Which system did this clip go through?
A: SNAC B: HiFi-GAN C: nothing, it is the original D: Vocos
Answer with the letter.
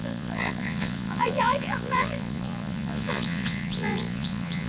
D